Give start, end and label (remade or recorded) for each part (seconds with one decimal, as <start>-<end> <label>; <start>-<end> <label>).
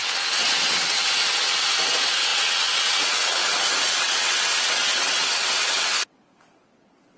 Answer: 0.0-7.2 remade